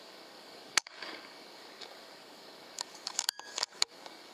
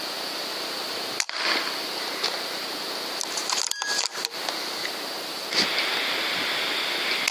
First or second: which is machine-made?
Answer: first